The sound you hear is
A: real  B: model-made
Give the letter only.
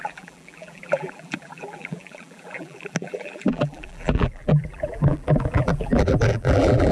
B